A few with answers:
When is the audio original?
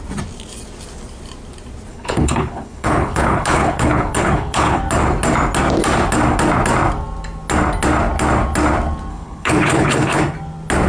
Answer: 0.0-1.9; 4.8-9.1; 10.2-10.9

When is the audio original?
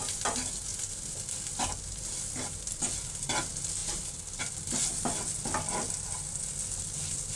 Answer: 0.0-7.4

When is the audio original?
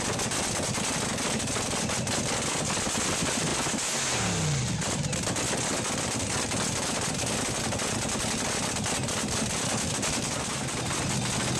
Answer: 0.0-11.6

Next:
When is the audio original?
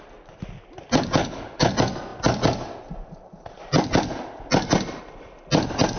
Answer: 0.0-1.2; 1.7-6.0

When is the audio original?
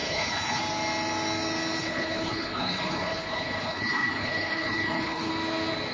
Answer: 0.6-1.8; 5.3-5.9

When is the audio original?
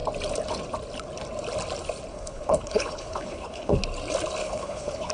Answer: 0.0-2.1; 3.8-4.4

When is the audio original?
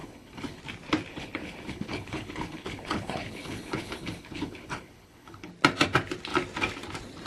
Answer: 0.6-1.1; 5.5-7.3